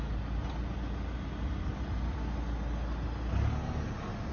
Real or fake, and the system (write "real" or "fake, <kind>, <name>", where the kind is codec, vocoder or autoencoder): real